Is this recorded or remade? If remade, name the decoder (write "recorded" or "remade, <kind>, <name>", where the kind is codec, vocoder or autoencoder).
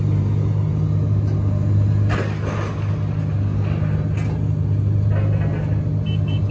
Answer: recorded